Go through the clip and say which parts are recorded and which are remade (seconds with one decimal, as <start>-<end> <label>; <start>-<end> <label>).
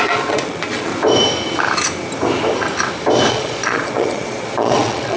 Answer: 0.0-0.9 remade; 0.9-3.3 recorded; 3.3-5.2 remade